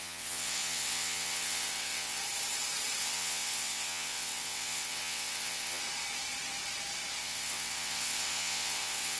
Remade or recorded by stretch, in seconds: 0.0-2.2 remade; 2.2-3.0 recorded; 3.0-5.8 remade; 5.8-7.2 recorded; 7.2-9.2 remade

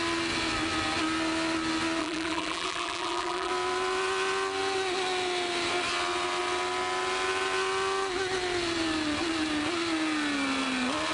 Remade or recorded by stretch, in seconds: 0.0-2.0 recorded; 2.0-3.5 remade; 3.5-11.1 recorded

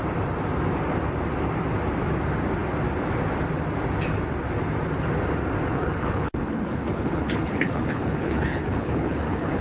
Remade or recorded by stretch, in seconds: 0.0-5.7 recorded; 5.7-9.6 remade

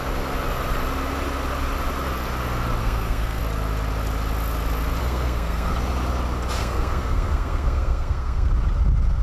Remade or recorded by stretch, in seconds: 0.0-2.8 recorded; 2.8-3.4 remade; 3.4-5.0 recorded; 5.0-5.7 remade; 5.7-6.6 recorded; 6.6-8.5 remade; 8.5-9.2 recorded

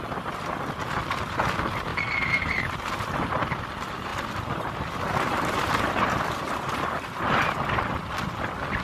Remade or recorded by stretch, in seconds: 0.0-1.9 recorded; 1.9-2.7 remade; 2.7-8.8 recorded

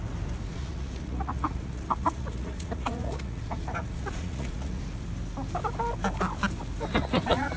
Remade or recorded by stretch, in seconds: 0.0-0.5 recorded; 0.5-4.8 remade; 4.8-6.9 recorded; 6.9-7.6 remade

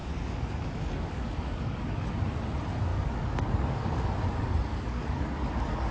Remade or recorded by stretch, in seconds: 0.0-2.1 remade; 2.1-2.9 recorded; 2.9-4.0 remade; 4.0-4.7 recorded; 4.7-5.9 remade

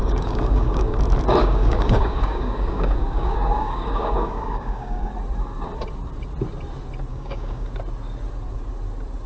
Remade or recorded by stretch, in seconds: 0.0-1.0 remade; 1.0-1.4 recorded; 1.4-5.1 remade; 5.1-7.1 recorded; 7.1-7.7 remade; 7.7-9.3 recorded